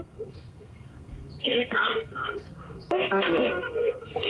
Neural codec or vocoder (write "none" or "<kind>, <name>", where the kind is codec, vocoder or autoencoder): codec, SNAC